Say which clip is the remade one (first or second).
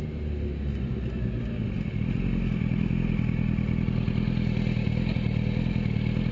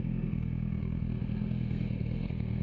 second